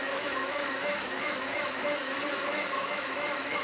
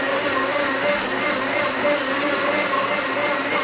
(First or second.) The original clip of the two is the second